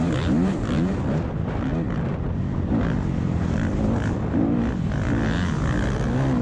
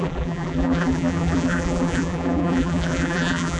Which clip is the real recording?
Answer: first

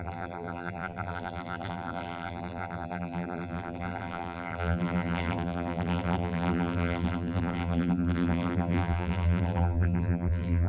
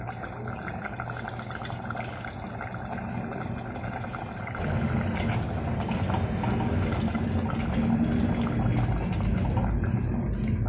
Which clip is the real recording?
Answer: second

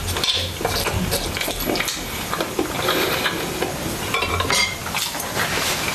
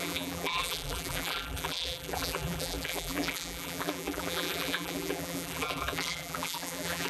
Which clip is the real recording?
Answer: first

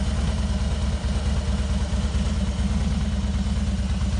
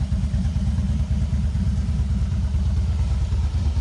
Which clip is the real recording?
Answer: first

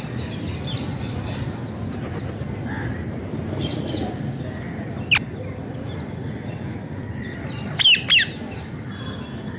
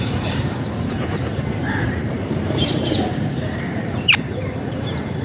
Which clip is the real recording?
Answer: first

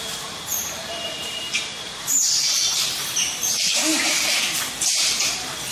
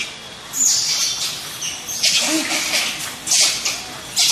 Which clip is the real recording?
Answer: second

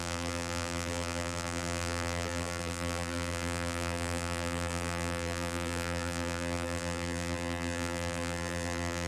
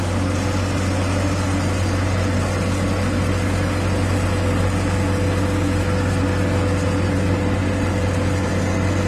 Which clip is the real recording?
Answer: second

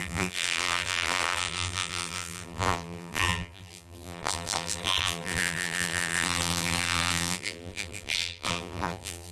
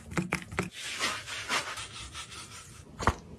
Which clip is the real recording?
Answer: second